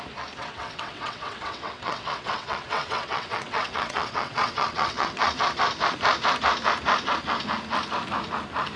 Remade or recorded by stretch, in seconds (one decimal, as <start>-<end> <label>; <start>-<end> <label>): 0.0-0.4 recorded; 0.4-5.3 remade; 5.3-8.8 recorded